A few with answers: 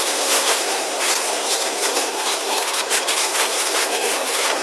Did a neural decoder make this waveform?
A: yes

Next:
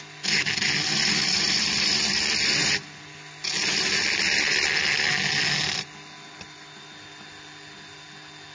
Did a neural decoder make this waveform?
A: no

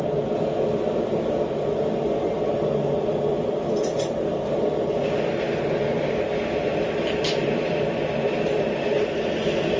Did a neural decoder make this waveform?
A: no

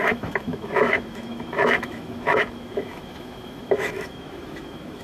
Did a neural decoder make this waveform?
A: yes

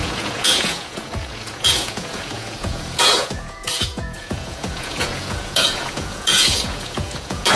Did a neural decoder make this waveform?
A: yes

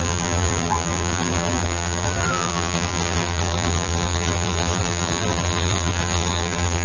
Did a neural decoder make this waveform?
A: yes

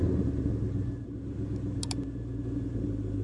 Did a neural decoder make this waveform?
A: no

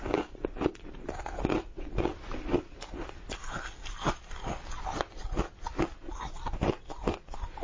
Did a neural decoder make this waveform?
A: no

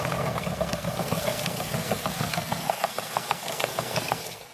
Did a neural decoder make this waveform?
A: yes